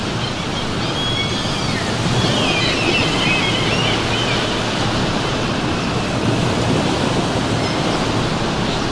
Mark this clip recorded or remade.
recorded